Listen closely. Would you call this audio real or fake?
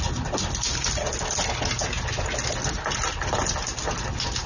real